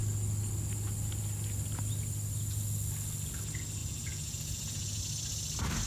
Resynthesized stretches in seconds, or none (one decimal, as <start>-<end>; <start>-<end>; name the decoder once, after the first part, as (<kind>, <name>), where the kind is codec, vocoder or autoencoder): 3.8-5.0 (vocoder, Vocos)